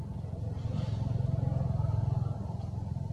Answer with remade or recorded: recorded